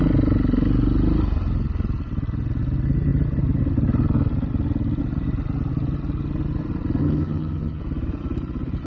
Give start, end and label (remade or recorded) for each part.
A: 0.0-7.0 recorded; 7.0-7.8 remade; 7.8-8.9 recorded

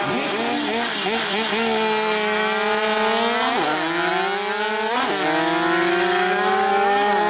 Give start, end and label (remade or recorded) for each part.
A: 0.0-5.9 recorded; 5.9-6.7 remade; 6.7-7.3 recorded